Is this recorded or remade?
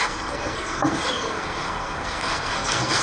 remade